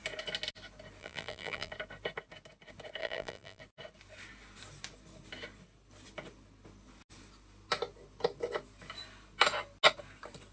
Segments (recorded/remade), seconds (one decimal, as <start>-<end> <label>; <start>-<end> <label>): 0.0-1.0 recorded; 1.0-1.7 remade; 1.7-3.0 recorded; 3.0-3.6 remade; 3.6-10.5 recorded